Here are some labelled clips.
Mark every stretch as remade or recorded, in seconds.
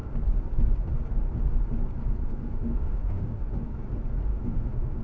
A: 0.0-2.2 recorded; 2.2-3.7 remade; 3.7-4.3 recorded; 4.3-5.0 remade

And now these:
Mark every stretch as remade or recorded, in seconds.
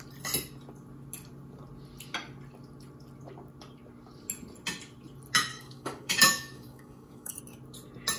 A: 0.0-5.5 recorded; 5.5-7.4 remade; 7.4-8.2 recorded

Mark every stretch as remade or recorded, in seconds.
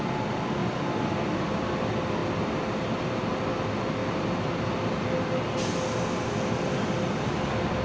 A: 0.0-7.8 recorded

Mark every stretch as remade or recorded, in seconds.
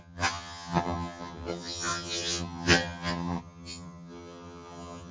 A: 0.0-5.1 remade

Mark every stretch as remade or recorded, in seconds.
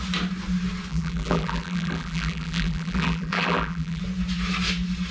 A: 0.0-0.9 recorded; 0.9-4.0 remade; 4.0-5.1 recorded